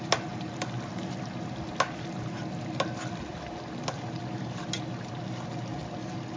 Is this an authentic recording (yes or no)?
yes